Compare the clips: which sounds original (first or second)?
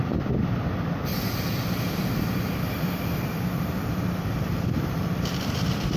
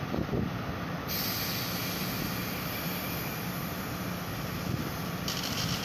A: second